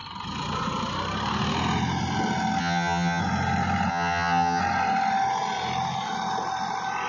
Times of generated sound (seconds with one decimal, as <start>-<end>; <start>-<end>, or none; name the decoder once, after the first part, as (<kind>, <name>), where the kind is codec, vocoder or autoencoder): 2.6-3.2 (vocoder, HiFi-GAN); 3.9-4.6